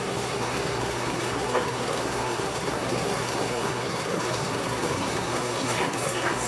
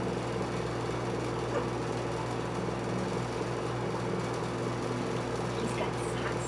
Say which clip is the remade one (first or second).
first